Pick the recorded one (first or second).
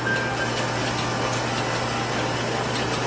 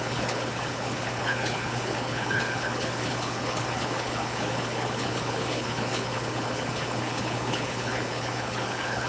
first